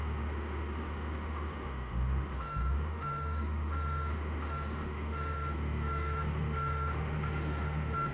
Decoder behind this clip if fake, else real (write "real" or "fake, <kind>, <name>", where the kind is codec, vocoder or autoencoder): fake, autoencoder, DAC-VAE